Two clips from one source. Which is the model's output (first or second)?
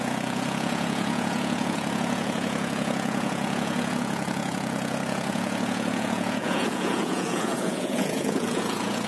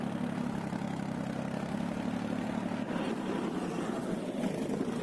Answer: first